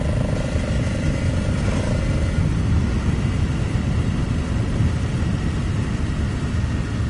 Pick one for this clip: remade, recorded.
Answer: recorded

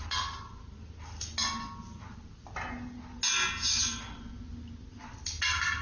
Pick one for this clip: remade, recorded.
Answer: recorded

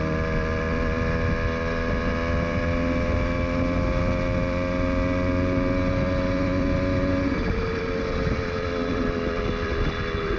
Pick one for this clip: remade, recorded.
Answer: recorded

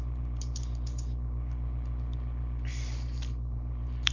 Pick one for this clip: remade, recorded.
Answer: remade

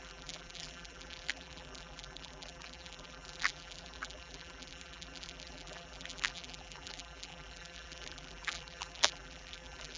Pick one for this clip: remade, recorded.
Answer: remade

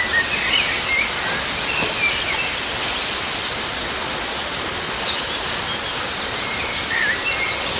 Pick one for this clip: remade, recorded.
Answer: recorded